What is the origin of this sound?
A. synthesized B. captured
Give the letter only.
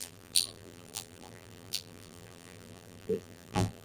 A